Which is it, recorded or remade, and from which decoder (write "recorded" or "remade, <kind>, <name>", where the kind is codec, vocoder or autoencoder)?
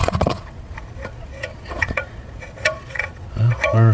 remade, vocoder, Vocos